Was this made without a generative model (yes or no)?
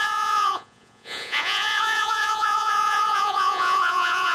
no